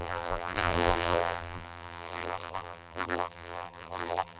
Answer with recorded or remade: remade